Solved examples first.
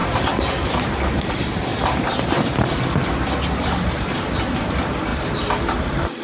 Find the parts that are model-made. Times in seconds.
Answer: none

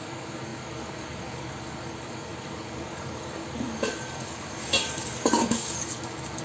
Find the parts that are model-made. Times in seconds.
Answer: 0.0-6.4 (codec, DAC)

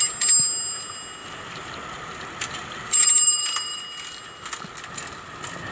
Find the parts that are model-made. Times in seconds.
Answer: 1.2-3.8 (vocoder, BigVGAN v2)

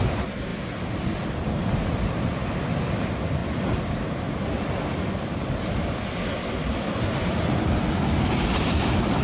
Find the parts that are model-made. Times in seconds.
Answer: none

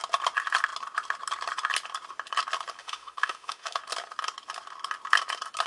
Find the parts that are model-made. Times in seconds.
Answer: 2.8-3.8 (autoencoder, DAC-VAE)

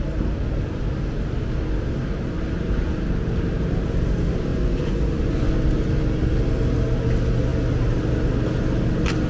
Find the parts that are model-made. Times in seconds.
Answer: 4.5-5.5 (vocoder, Vocos)

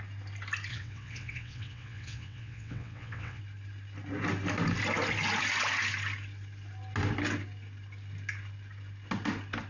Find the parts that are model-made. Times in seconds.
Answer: 0.7-3.4 (vocoder, WaveNeXt)